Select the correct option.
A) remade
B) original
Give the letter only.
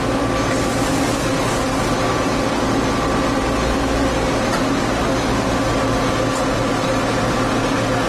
B